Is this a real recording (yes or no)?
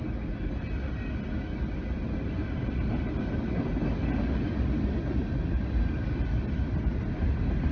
yes